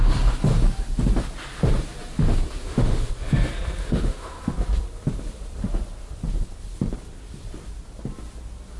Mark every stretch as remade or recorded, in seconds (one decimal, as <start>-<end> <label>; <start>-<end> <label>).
0.0-2.6 recorded; 2.6-3.1 remade; 3.1-3.8 recorded; 3.8-4.4 remade; 4.4-8.8 recorded